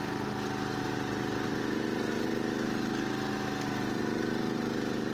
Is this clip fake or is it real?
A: real